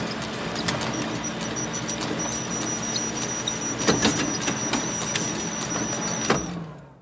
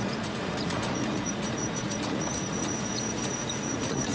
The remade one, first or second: second